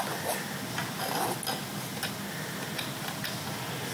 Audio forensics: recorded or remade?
recorded